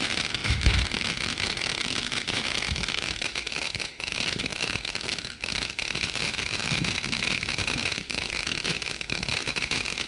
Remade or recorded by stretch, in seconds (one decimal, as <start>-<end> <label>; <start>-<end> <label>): 0.0-10.1 remade